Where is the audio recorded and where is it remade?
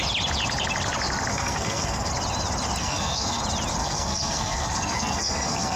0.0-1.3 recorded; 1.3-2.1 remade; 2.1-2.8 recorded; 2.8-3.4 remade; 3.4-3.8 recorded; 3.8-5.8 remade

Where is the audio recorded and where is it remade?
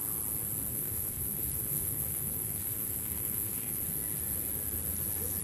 0.0-0.7 recorded; 0.7-3.9 remade; 3.9-5.4 recorded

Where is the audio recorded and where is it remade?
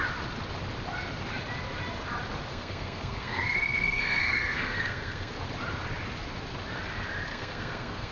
0.0-2.5 recorded; 2.5-5.3 remade; 5.3-7.3 recorded; 7.3-8.1 remade